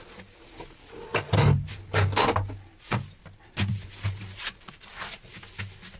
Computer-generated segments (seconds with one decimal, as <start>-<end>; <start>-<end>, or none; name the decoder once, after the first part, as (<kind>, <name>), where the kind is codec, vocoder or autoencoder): none